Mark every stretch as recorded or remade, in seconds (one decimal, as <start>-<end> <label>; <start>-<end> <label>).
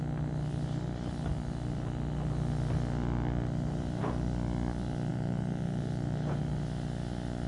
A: 0.0-5.1 recorded; 5.1-6.4 remade; 6.4-7.5 recorded